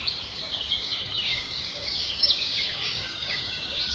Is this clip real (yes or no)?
no